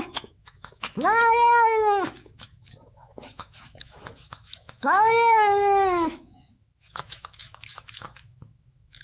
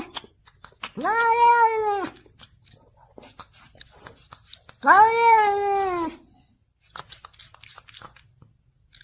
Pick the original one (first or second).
second